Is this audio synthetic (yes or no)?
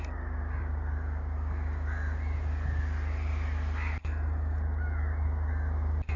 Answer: no